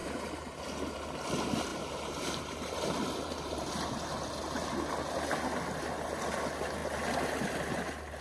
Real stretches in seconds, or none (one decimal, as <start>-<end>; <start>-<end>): 0.6-1.7; 3.9-8.2